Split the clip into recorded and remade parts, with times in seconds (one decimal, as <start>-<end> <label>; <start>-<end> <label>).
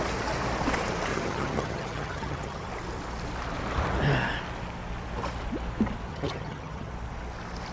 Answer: 0.0-1.1 recorded; 1.1-2.7 remade; 2.7-6.1 recorded; 6.1-6.9 remade; 6.9-7.7 recorded